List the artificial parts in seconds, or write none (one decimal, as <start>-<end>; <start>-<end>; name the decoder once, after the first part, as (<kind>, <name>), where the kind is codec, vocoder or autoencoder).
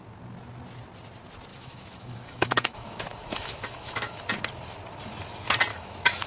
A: 1.5-4.2 (autoencoder, DAC-VAE); 5.7-6.3